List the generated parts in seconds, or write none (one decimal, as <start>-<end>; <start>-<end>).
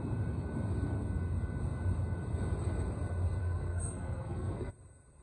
3.4-4.7